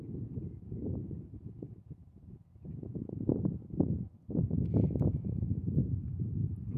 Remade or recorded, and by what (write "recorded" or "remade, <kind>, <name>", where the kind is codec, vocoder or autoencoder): remade, vocoder, Vocos